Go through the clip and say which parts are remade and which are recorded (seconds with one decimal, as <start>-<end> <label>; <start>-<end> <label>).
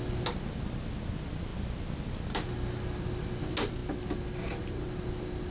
0.0-5.5 recorded